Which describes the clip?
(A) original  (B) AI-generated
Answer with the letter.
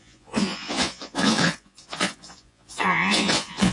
B